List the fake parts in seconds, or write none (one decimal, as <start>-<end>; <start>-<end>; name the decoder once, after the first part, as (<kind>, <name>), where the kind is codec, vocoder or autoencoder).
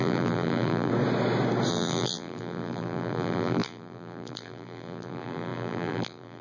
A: 0.0-0.9 (vocoder, BigVGAN v2); 1.7-6.4